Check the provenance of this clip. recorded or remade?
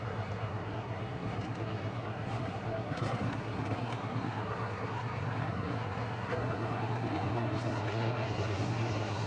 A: remade